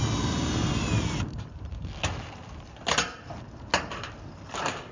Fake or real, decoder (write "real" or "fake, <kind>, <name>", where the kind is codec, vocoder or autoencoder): real